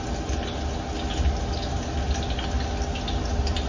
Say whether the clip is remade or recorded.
recorded